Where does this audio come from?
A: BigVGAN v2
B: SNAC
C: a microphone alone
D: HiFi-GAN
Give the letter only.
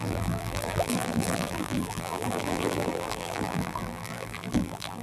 A